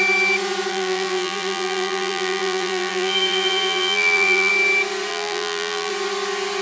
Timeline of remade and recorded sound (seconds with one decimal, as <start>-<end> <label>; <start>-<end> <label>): 0.0-0.7 recorded; 0.7-4.5 remade; 4.5-5.1 recorded; 5.1-5.9 remade; 5.9-6.6 recorded

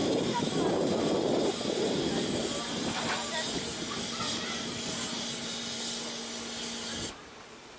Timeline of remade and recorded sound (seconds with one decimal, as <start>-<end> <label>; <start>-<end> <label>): 0.0-1.1 remade; 1.1-6.9 recorded; 6.9-7.8 remade

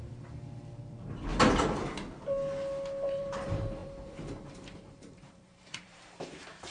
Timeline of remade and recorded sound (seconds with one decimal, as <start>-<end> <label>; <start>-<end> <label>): 0.0-1.3 remade; 1.3-3.2 recorded; 3.2-6.7 remade

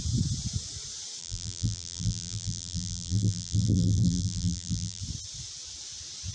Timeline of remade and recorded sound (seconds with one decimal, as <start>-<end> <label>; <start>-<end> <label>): 0.0-1.2 recorded; 1.2-5.0 remade; 5.0-6.3 recorded

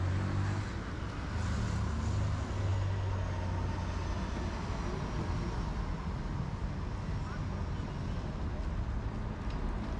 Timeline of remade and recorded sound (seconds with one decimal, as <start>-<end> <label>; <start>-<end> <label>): 0.0-10.0 recorded

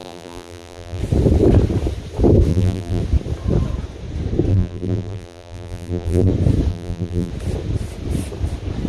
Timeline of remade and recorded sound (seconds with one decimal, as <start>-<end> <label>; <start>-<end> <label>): 0.0-1.0 remade; 1.0-2.5 recorded; 2.5-3.0 remade; 3.0-4.5 recorded; 4.5-6.3 remade; 6.3-6.7 recorded; 6.7-7.3 remade; 7.3-8.9 recorded

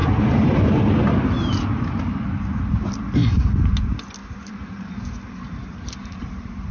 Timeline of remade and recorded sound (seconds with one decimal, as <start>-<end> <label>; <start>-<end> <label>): 0.0-0.9 remade; 0.9-4.2 recorded; 4.2-6.3 remade; 6.3-6.7 recorded

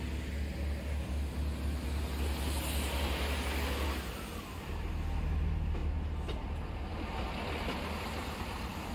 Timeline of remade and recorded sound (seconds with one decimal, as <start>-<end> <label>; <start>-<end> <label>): 0.0-8.9 recorded